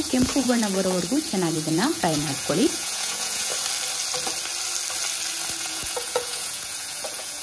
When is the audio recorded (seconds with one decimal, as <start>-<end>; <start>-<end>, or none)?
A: 3.5-5.6